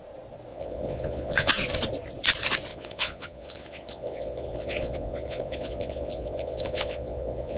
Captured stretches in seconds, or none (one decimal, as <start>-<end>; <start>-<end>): 0.0-0.5; 1.5-2.7